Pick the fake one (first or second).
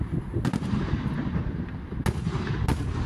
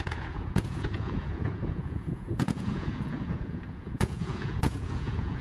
second